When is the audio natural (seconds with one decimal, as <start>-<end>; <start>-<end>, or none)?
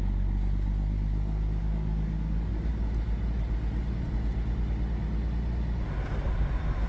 0.0-1.6; 2.7-6.9